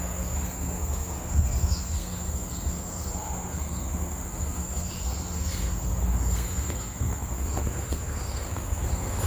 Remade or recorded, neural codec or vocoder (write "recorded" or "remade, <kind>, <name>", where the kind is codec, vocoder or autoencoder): remade, codec, SNAC